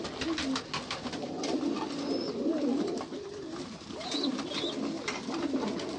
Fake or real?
real